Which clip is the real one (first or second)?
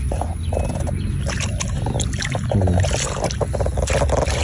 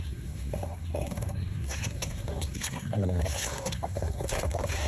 first